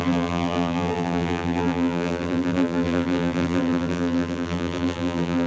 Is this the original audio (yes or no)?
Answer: no